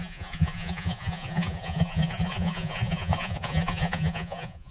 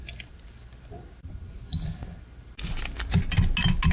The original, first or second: second